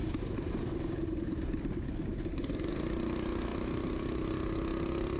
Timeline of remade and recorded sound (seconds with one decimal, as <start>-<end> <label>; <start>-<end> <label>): 0.0-5.2 recorded